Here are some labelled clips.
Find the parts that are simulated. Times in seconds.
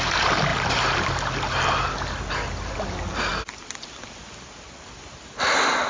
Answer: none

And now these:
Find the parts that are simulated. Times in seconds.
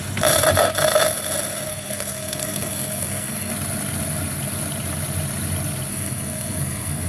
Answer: 1.7-3.5 (codec, SNAC); 5.9-7.1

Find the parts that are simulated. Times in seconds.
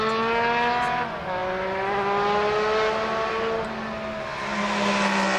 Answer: none